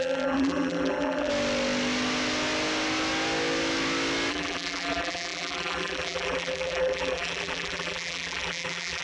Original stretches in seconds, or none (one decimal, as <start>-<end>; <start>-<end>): 1.3-4.3

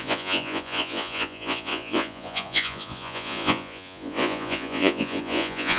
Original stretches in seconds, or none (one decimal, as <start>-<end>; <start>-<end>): none

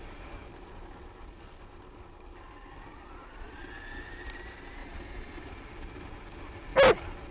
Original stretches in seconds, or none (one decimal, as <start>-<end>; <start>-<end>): 0.0-2.9; 3.6-4.8; 5.5-7.3

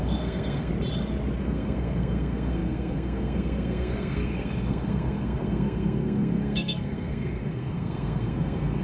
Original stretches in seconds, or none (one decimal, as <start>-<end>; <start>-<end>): 0.7-1.4

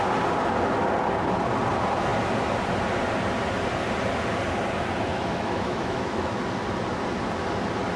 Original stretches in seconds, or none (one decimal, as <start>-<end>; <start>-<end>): 0.0-5.1; 6.4-8.0

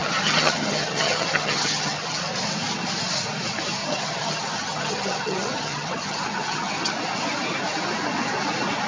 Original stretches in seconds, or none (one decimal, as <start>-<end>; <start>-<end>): 2.2-3.8; 6.9-8.9